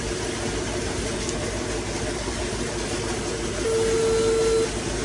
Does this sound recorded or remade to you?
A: recorded